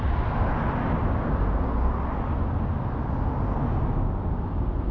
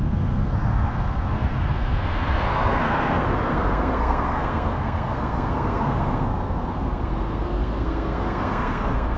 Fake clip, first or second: second